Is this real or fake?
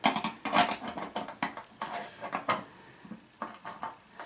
real